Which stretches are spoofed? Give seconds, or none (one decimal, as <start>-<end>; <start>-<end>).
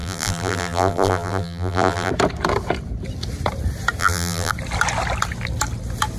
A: 0.0-2.1; 4.0-4.5